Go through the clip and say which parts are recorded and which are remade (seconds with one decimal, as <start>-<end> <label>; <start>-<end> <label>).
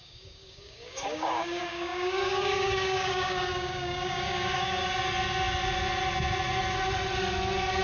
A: 0.0-4.8 remade; 4.8-7.8 recorded